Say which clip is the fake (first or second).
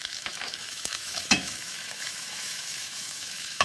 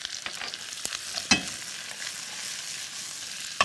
first